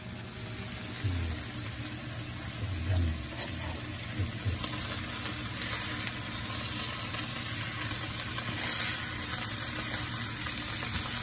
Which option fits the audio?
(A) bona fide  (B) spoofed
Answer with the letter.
A